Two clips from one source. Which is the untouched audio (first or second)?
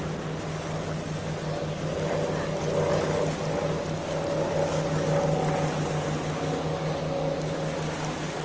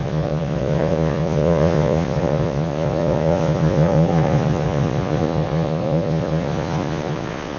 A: first